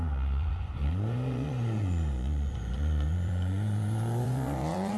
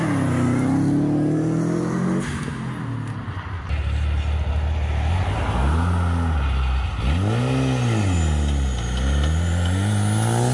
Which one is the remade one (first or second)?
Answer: first